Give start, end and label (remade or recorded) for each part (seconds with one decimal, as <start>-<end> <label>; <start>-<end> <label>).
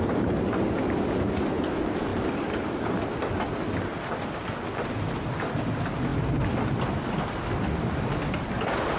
0.0-9.0 recorded